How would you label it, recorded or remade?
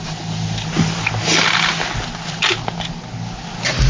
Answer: recorded